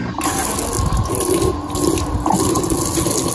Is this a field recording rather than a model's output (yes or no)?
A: yes